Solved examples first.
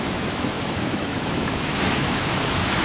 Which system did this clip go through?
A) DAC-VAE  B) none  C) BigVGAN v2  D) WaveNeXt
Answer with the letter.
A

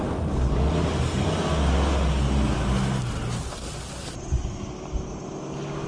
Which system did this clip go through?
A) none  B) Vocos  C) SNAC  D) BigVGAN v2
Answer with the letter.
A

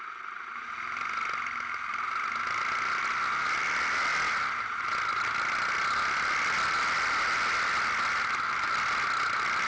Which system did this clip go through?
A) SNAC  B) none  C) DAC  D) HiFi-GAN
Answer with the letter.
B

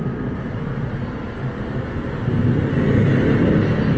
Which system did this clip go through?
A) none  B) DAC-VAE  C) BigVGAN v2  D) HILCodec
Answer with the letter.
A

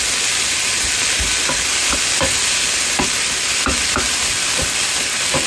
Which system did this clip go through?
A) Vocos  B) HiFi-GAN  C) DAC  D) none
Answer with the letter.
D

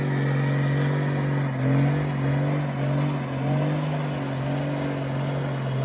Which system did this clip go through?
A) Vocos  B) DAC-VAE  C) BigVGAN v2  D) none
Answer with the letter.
D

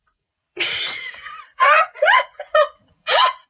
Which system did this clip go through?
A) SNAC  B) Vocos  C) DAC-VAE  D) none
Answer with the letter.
B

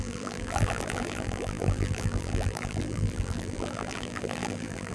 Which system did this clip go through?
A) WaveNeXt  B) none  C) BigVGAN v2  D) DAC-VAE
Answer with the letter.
C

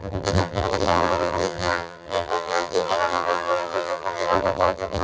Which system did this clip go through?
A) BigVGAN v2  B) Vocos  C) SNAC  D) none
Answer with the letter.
A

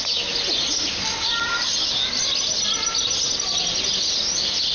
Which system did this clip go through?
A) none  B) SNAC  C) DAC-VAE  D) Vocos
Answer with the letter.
A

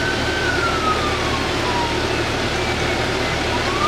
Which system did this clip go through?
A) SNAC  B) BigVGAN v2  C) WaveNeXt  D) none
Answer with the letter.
D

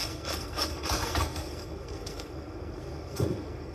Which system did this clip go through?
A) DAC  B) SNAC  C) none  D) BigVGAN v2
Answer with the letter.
B